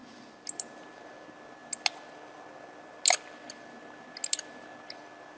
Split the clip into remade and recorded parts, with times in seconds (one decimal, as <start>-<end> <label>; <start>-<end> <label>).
0.0-5.4 recorded